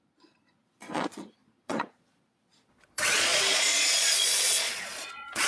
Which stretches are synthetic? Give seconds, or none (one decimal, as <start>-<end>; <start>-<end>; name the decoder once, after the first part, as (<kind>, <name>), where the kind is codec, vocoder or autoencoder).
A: 0.0-5.5 (vocoder, Vocos)